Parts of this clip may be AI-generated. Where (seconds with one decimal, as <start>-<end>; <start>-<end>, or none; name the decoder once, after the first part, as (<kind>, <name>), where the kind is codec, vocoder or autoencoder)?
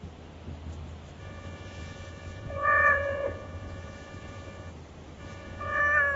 1.2-4.7 (vocoder, Vocos); 5.2-5.8